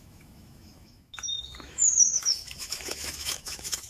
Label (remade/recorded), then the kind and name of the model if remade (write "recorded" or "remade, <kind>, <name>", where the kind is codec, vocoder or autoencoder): remade, autoencoder, DAC-VAE